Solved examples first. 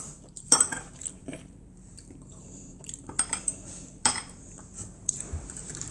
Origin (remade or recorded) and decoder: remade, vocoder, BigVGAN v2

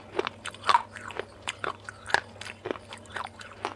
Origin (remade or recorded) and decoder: recorded